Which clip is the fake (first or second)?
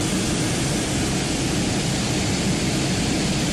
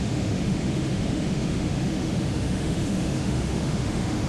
second